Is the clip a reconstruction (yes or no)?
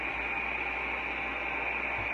no